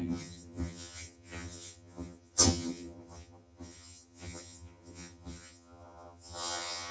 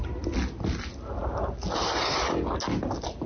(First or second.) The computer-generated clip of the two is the first